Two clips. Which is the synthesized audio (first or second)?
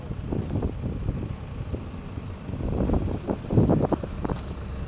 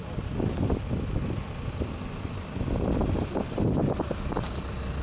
first